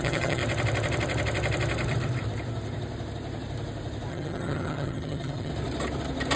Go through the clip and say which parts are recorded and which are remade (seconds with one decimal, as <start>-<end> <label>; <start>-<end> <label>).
0.0-0.4 remade; 0.4-4.1 recorded; 4.1-5.5 remade; 5.5-6.4 recorded